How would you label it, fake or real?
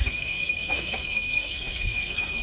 fake